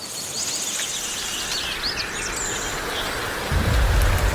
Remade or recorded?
recorded